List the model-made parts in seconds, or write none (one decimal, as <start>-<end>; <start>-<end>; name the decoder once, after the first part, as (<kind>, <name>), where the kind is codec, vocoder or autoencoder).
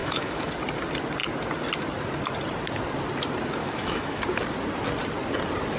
0.0-0.5 (autoencoder, DAC-VAE); 3.6-4.2